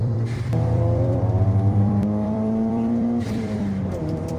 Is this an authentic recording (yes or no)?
no